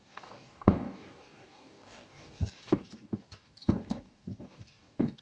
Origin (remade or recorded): remade